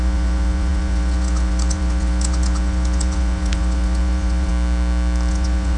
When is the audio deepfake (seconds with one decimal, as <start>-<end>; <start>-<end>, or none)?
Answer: 0.0-4.5; 5.3-5.8